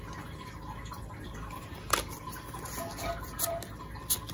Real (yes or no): yes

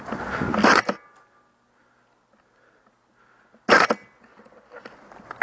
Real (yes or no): yes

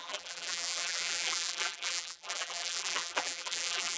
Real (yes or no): no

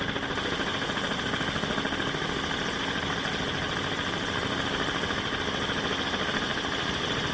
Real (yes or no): yes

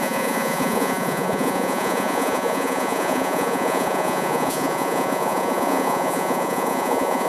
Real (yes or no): no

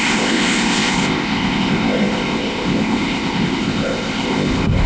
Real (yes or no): no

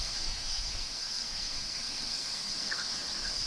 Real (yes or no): no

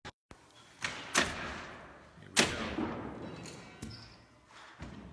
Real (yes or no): yes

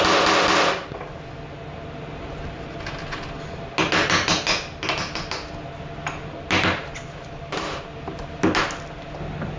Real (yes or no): yes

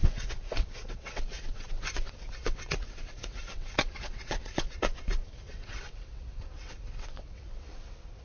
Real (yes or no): no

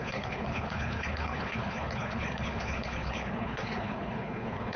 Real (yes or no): no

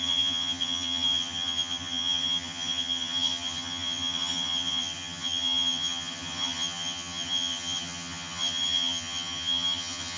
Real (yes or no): no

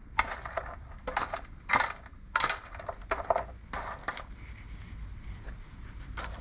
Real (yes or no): yes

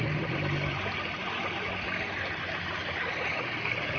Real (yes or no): yes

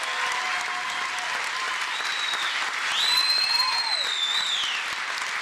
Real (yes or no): yes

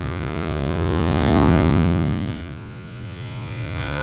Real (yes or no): no